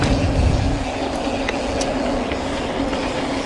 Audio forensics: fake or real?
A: real